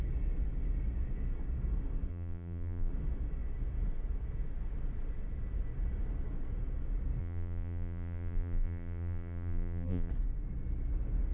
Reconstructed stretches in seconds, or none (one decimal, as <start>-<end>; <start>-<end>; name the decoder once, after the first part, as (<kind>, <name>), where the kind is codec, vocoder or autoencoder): 2.1-2.9 (vocoder, BigVGAN v2); 7.2-10.1